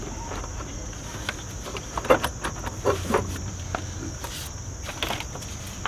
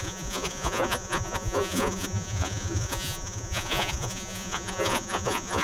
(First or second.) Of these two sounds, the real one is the first